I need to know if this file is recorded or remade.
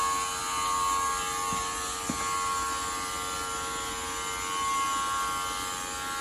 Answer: recorded